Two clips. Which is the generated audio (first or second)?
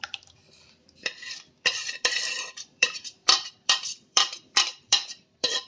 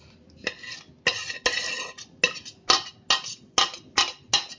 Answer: first